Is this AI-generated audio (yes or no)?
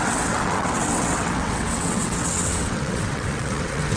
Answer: yes